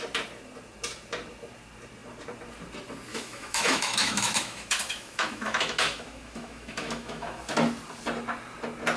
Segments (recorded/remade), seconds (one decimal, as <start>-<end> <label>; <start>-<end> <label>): 0.0-3.1 recorded; 3.1-7.4 remade; 7.4-9.0 recorded